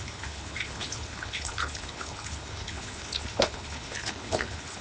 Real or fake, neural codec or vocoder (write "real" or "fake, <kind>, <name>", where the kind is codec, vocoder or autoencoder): fake, codec, HILCodec